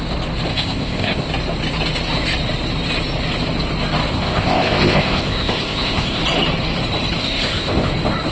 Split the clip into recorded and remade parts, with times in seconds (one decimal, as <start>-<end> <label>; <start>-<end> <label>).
0.0-0.5 recorded; 0.5-1.3 remade; 1.3-4.1 recorded; 4.1-6.2 remade; 6.2-7.2 recorded; 7.2-7.9 remade; 7.9-8.3 recorded